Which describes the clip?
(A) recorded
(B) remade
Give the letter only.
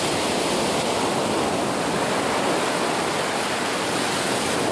A